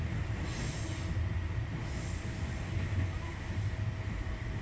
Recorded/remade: recorded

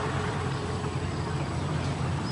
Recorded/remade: recorded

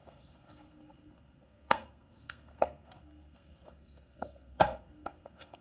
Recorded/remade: remade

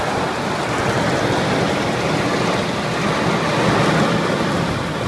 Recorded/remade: recorded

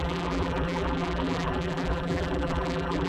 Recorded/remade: remade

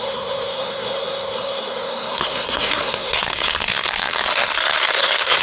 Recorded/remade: remade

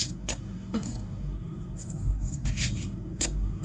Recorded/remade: remade